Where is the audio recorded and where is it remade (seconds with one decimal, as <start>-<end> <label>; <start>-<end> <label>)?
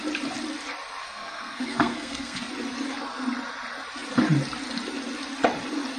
0.0-1.0 recorded; 1.0-2.5 remade; 2.5-6.0 recorded